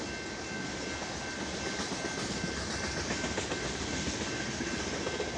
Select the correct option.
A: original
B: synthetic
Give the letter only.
A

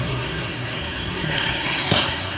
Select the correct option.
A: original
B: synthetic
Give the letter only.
B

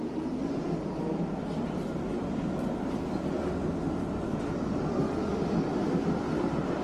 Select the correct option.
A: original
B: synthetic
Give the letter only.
A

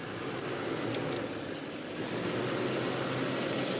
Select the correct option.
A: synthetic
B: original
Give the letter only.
B